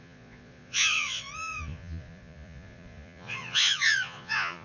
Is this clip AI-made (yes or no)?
yes